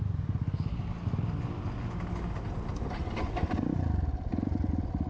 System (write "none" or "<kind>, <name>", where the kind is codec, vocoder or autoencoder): none